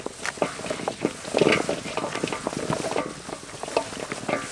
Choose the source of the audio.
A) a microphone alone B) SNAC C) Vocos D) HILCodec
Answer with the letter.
A